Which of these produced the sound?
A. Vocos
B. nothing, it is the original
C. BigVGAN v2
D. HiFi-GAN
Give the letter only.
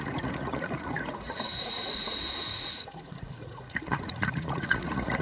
A